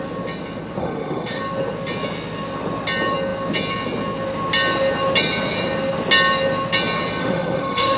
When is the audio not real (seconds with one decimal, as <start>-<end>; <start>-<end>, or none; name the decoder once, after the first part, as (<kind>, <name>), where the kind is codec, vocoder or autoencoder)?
0.8-1.4 (autoencoder, DAC-VAE); 7.2-8.0

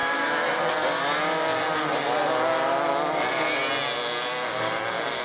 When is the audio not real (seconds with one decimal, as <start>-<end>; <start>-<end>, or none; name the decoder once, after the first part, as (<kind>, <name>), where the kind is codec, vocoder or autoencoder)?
0.0-0.6 (autoencoder, DAC-VAE)

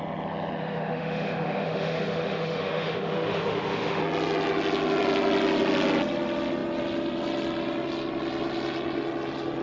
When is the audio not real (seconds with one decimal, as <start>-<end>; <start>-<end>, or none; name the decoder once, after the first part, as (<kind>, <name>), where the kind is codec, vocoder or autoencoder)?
0.6-4.0 (autoencoder, DAC-VAE)

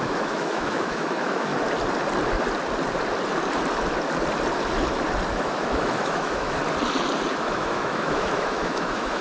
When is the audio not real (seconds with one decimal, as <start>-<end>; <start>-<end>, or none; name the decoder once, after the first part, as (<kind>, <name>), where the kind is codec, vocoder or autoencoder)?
0.0-1.5 (autoencoder, DAC-VAE); 5.3-6.6; 7.3-9.2